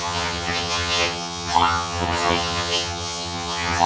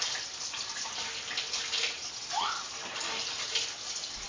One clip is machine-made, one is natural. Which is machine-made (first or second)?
first